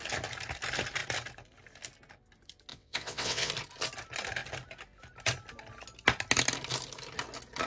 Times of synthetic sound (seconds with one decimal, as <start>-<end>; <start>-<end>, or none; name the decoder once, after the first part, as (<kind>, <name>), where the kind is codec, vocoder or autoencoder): 2.7-3.5 (vocoder, WaveNeXt)